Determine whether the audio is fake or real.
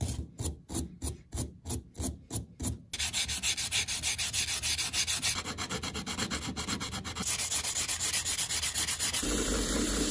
real